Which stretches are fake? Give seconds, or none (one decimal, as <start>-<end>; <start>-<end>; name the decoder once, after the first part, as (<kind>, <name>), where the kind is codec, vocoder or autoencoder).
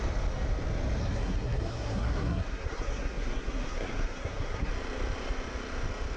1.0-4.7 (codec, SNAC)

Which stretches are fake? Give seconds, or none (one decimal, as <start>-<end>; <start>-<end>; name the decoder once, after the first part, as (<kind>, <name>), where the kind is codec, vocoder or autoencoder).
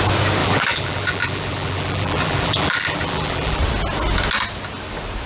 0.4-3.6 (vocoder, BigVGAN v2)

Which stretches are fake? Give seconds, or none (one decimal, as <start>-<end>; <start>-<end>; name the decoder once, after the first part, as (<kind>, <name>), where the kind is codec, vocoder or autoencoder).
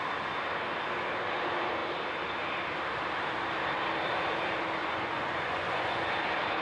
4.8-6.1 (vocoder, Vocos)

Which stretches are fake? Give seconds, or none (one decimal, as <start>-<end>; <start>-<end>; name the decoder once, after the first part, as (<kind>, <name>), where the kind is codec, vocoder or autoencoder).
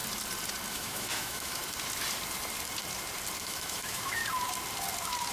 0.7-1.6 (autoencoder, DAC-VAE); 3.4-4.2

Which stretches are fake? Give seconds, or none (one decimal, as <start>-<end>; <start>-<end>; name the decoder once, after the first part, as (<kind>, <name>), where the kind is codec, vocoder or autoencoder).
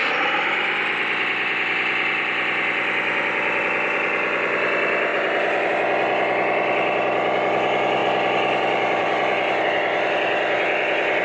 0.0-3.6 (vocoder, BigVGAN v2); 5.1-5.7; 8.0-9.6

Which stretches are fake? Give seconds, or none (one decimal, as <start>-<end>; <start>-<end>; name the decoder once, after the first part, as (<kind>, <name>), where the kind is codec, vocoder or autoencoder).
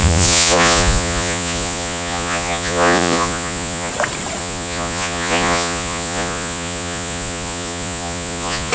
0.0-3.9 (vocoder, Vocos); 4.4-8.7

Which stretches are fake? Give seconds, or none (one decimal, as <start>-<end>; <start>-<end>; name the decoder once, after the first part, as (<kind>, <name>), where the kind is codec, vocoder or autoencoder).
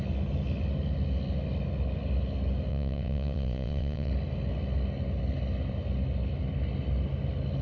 2.7-4.1 (vocoder, WaveNeXt)